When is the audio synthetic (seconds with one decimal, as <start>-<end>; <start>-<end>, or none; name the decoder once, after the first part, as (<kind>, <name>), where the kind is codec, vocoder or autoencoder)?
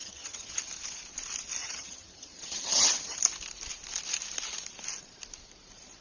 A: 0.0-0.6 (vocoder, HiFi-GAN); 1.6-3.2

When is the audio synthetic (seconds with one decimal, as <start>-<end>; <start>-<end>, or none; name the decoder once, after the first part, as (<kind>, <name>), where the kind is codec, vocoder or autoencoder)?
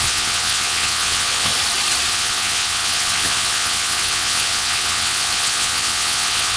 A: 0.0-1.5 (vocoder, WaveNeXt); 2.1-6.6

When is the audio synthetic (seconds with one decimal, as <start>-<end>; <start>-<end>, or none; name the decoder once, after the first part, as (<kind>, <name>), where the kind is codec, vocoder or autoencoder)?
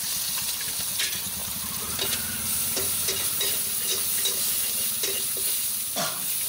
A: 1.4-1.9 (vocoder, BigVGAN v2)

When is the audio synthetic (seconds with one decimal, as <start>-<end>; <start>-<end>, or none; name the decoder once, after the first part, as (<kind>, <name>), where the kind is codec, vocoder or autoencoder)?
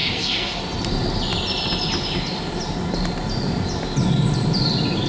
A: 0.0-0.6 (codec, SNAC)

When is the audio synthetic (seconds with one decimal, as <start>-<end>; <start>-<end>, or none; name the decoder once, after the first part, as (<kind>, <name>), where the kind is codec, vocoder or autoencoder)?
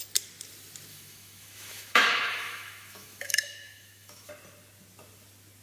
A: 0.9-4.3 (autoencoder, DAC-VAE)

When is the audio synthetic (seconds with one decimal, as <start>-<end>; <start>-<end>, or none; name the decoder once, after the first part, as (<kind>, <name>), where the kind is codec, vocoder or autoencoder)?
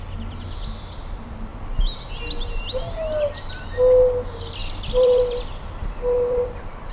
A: 4.6-6.9 (vocoder, BigVGAN v2)